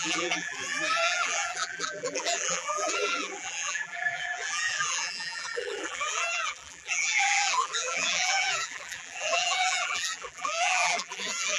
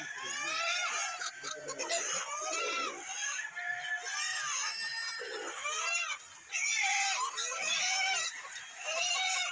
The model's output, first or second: first